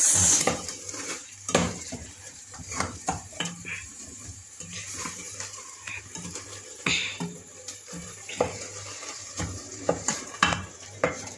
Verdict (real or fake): fake